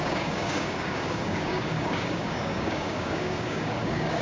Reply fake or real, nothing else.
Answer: fake